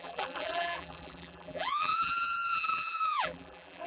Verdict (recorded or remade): remade